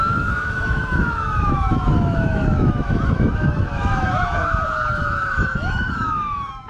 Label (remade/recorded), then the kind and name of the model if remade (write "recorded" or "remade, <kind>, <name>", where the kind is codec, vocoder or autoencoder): remade, autoencoder, DAC-VAE